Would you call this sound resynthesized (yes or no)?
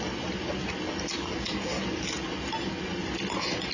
no